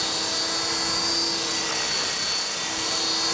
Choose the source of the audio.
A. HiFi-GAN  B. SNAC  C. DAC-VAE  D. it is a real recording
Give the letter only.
D